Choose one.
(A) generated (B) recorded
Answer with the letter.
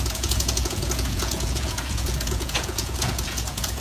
A